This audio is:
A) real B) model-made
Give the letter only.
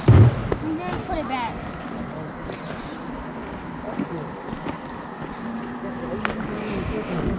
A